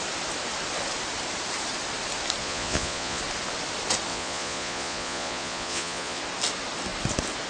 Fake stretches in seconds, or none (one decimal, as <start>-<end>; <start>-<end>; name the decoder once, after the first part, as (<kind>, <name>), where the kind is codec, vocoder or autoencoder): 2.4-3.2 (vocoder, Vocos); 4.1-6.2